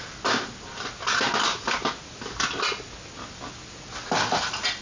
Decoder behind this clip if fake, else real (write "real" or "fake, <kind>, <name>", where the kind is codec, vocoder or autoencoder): real